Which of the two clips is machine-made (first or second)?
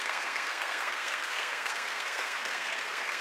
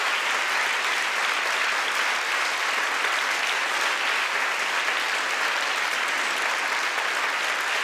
first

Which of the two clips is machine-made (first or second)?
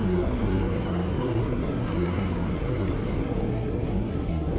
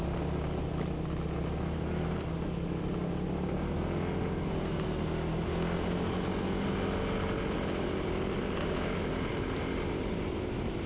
first